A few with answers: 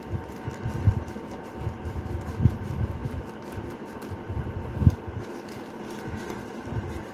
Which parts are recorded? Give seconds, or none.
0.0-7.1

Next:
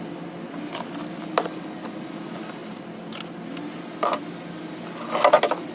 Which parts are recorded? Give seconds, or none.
0.0-5.7

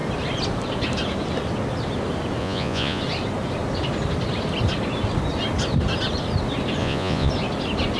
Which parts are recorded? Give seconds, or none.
0.0-2.4; 3.0-6.8; 7.3-8.0